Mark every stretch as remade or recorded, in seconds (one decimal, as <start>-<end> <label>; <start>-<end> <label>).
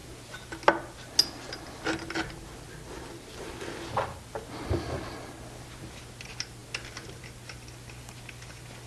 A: 0.0-8.9 recorded